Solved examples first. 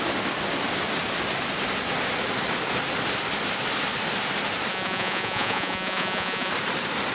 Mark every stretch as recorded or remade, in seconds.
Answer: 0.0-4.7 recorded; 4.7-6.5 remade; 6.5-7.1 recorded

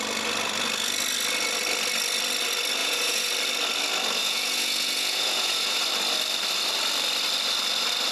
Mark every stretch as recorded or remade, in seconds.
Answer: 0.0-2.8 recorded; 2.8-3.3 remade; 3.3-4.2 recorded; 4.2-5.8 remade; 5.8-8.1 recorded